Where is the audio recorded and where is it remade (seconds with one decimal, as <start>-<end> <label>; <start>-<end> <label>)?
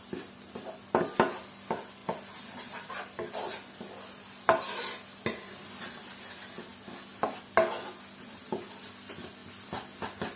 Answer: 0.0-10.4 recorded